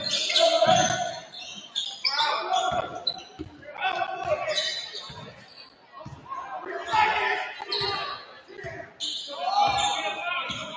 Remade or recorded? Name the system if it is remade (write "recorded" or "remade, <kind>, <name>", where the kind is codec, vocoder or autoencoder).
recorded